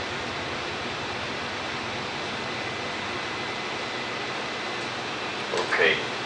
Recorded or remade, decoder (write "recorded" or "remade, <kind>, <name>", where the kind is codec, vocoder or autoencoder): recorded